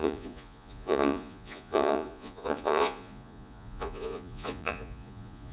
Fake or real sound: fake